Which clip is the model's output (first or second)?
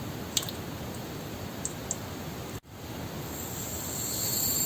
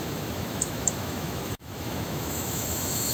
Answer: second